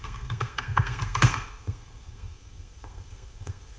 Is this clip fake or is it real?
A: fake